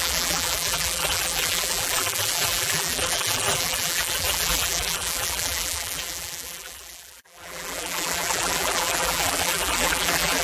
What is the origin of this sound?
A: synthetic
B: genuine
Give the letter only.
A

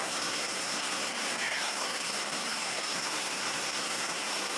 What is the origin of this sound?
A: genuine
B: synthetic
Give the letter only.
B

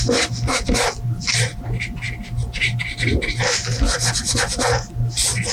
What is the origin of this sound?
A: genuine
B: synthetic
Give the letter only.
A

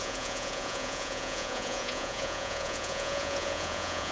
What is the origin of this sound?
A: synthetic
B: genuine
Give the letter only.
A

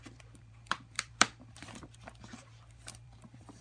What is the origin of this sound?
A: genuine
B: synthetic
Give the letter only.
B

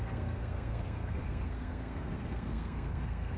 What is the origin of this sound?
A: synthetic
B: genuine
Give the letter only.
A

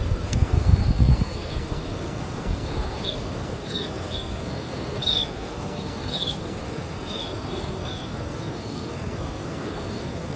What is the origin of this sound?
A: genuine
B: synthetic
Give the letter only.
B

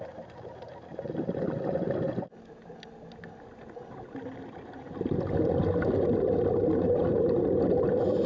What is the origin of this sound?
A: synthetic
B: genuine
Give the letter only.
B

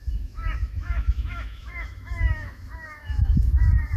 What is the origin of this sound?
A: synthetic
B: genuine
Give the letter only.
A